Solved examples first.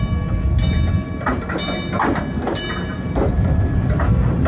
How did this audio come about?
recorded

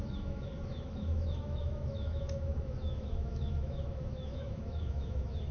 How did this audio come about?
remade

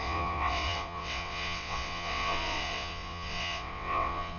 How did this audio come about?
remade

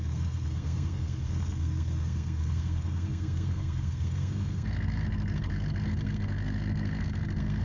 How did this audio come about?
remade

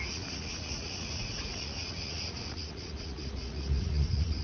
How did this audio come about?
remade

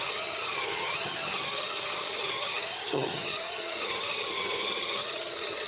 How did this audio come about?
remade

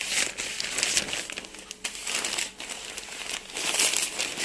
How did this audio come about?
recorded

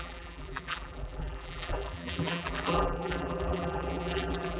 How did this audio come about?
remade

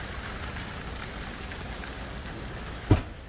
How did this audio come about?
recorded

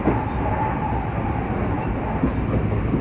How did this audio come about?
recorded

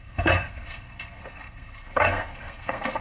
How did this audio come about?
remade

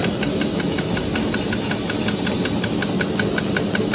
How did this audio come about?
recorded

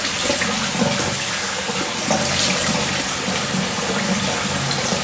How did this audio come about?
recorded